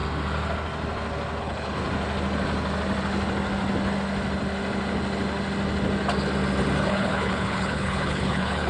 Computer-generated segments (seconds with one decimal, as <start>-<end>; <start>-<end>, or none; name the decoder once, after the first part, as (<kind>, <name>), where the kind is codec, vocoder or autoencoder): 1.4-1.8 (codec, HILCodec); 6.9-8.7